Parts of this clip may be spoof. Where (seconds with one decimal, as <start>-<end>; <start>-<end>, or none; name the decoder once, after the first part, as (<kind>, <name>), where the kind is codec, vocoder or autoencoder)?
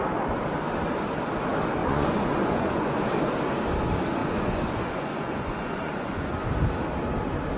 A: 1.8-3.0 (vocoder, Vocos); 4.2-6.5